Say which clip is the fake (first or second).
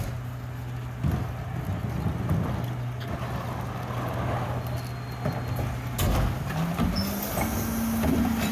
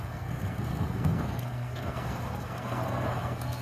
second